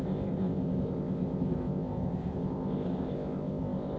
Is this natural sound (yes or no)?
no